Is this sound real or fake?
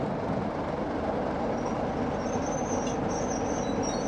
real